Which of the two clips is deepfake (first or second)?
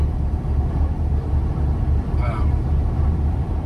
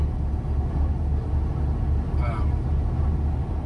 first